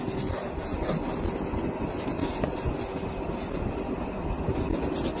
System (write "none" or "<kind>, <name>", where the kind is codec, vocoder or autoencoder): none